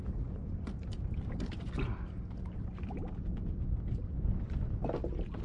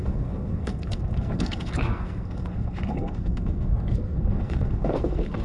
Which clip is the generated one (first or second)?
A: second